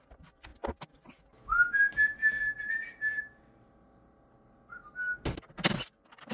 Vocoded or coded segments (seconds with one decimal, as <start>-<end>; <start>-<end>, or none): none